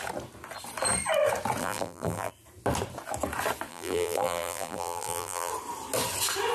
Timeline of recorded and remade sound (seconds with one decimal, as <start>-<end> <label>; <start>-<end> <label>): 0.0-1.6 recorded; 1.6-2.3 remade; 2.3-3.7 recorded; 3.7-5.5 remade; 5.5-6.5 recorded